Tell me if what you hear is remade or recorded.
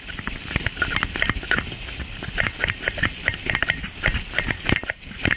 recorded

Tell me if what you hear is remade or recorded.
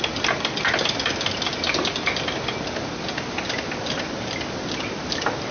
recorded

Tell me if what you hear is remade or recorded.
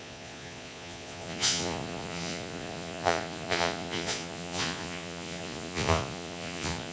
remade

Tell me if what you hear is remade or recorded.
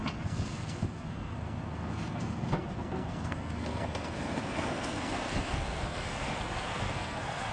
remade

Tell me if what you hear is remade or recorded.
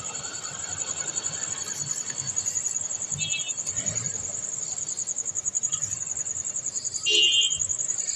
recorded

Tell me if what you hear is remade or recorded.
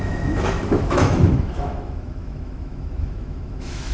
remade